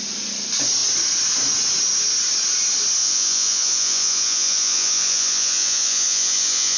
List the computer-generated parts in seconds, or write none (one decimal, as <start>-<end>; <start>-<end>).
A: 3.0-6.8

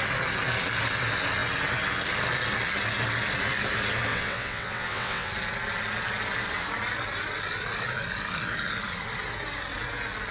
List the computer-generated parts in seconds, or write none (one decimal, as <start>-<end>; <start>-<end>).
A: 4.1-5.3

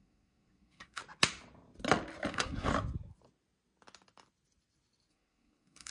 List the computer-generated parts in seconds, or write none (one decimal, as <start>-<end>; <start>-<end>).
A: 0.0-1.0; 2.3-2.7; 5.1-5.9